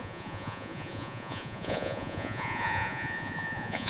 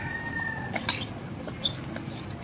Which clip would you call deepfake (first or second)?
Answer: first